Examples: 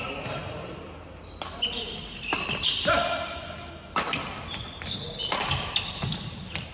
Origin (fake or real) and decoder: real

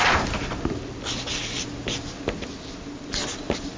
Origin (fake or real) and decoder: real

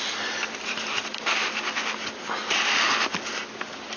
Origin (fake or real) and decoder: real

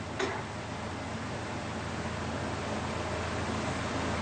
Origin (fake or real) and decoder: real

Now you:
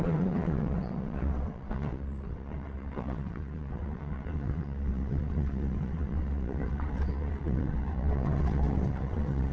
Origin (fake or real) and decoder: fake, vocoder, WaveNeXt